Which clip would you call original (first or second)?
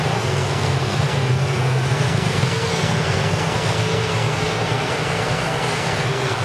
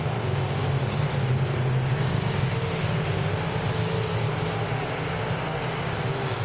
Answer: second